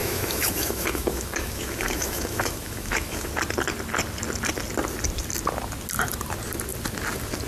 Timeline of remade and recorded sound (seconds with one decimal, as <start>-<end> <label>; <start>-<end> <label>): 0.0-3.3 remade; 3.3-7.5 recorded